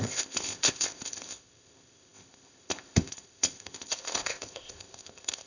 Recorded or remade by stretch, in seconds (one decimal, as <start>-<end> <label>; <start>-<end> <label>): 0.0-5.5 remade